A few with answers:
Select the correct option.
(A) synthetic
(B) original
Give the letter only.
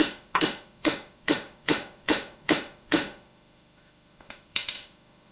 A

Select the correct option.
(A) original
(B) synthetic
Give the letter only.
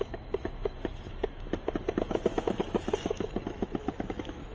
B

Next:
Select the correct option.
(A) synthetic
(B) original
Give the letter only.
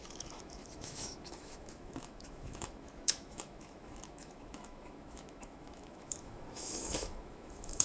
A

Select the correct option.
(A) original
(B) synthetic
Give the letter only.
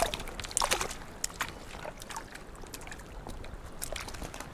A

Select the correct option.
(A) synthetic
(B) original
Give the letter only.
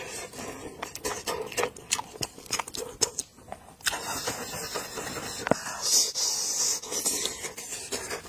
B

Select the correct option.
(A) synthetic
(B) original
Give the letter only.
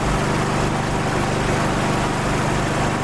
B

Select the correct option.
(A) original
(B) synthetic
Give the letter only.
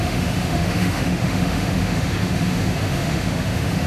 B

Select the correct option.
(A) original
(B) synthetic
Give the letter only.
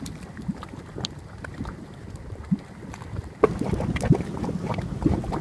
A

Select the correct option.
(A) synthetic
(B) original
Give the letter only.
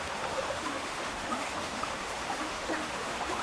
A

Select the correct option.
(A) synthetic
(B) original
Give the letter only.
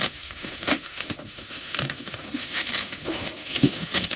A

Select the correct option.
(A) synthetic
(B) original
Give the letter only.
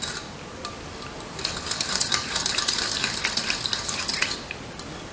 B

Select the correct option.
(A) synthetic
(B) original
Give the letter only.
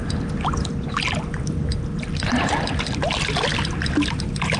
B